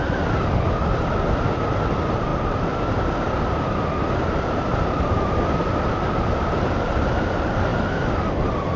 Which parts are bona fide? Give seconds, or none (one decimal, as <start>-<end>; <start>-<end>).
0.0-8.8